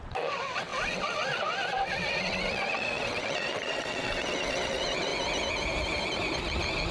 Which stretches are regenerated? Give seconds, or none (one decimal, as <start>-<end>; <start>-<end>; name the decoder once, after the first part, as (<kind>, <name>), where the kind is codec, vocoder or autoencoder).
0.0-5.1 (vocoder, WaveNeXt)